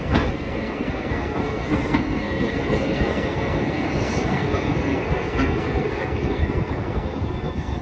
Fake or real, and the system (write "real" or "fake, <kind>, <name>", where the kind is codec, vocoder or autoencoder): fake, codec, SNAC